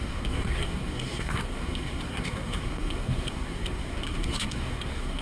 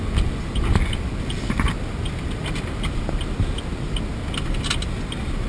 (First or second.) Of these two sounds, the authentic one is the second